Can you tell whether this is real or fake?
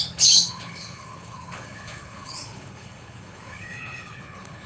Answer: fake